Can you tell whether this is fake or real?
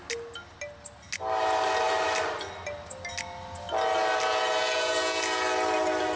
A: real